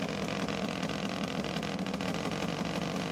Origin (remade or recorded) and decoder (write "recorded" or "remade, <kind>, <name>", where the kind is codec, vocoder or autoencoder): remade, vocoder, BigVGAN v2